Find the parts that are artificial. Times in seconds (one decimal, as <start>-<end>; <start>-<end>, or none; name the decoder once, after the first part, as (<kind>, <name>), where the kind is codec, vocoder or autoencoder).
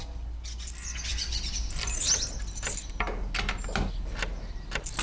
none